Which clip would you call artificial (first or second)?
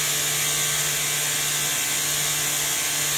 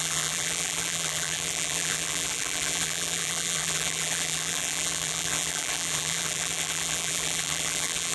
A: second